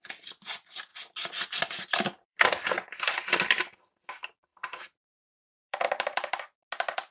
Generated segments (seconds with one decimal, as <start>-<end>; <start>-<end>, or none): 0.9-4.1; 4.5-5.9